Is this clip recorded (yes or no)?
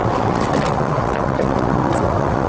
no